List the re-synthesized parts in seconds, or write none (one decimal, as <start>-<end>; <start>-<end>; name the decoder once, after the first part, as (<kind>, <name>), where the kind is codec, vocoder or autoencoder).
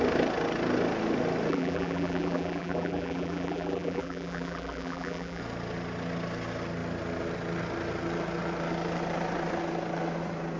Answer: 1.5-5.4 (vocoder, BigVGAN v2)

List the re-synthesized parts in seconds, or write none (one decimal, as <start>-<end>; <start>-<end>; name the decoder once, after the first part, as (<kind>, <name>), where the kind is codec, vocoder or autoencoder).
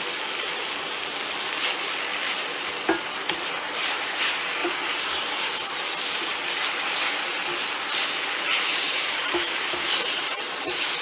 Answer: 2.1-2.7 (vocoder, BigVGAN v2); 4.6-5.2; 8.7-11.0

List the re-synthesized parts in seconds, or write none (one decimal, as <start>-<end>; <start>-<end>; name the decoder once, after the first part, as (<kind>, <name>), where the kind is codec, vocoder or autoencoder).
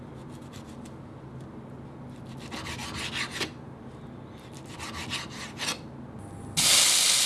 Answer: none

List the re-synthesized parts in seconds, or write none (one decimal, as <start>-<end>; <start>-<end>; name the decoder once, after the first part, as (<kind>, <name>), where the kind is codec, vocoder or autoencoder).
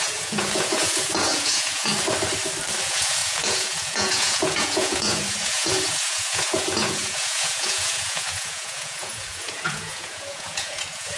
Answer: 0.0-1.9 (vocoder, Vocos); 2.8-11.2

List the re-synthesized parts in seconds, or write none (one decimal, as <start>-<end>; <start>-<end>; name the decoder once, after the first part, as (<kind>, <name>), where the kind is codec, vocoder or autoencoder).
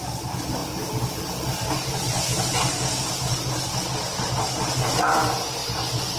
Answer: none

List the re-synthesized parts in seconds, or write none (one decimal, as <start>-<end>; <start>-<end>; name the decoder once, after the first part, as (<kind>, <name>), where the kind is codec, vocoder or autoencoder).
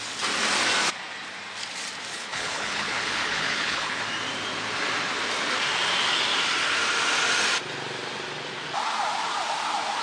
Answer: 2.1-4.0 (codec, HILCodec)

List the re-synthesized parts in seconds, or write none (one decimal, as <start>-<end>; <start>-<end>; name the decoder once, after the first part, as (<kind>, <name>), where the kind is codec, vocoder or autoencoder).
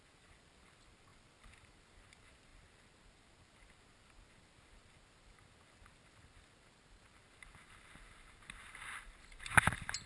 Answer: none